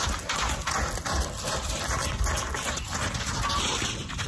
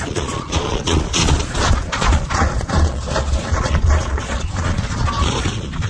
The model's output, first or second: second